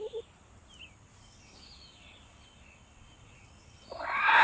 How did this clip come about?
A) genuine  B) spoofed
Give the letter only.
A